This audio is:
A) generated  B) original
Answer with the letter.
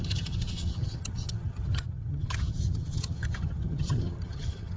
A